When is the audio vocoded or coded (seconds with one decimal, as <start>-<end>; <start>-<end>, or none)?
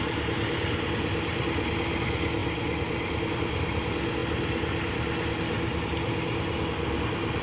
none